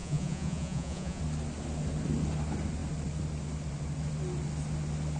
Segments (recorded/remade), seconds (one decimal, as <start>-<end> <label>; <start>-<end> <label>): 0.0-1.2 remade; 1.2-5.2 recorded